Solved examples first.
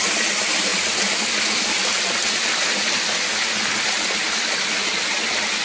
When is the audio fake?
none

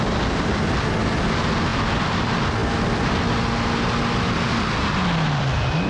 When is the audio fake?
none

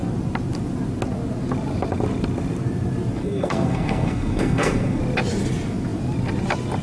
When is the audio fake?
3.2-5.0

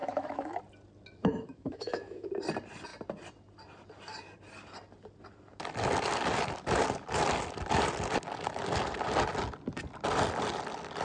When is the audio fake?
0.0-0.6; 1.2-2.3

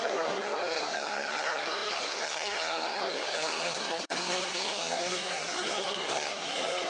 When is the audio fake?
0.0-6.9

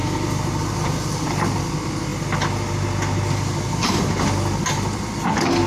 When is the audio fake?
0.0-0.6

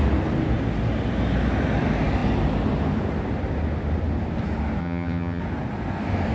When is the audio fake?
4.8-5.4

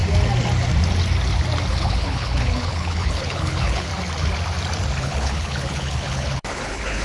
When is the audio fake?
1.7-3.9; 5.0-7.0